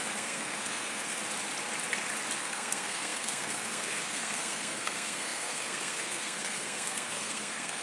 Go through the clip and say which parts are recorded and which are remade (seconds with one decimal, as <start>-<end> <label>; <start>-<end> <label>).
0.0-1.2 remade; 1.2-2.4 recorded; 2.4-7.8 remade